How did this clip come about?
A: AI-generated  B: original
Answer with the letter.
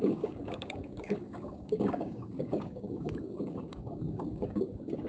A